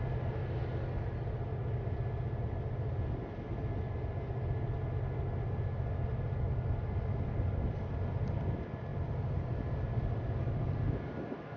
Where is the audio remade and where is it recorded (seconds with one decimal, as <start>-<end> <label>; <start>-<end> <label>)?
0.0-11.6 recorded